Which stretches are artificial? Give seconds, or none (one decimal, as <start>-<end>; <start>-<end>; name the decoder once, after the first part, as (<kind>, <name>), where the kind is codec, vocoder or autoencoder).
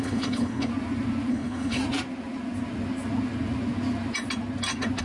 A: 0.0-0.7 (codec, HILCodec); 1.3-1.8